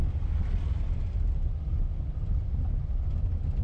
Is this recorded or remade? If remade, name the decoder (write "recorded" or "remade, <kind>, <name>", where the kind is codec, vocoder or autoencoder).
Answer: recorded